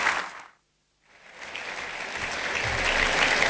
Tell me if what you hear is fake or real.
real